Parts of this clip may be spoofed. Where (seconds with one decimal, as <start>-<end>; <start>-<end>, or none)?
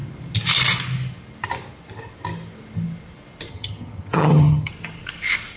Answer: 3.5-4.7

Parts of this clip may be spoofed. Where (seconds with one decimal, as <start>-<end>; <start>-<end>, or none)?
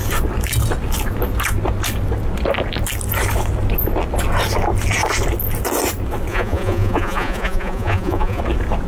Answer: 6.3-8.4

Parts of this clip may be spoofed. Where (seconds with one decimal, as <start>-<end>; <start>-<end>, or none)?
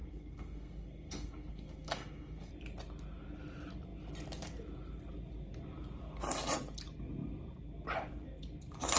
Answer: 0.0-2.5